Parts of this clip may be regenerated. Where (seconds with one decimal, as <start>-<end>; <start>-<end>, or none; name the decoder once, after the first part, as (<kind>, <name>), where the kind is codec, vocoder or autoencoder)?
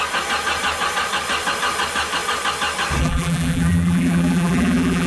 3.0-5.1 (vocoder, BigVGAN v2)